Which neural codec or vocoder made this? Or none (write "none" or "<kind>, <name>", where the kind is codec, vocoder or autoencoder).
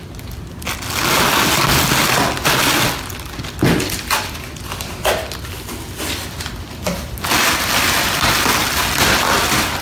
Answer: none